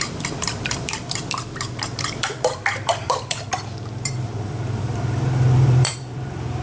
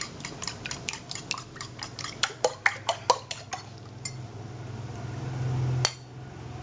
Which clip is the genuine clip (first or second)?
second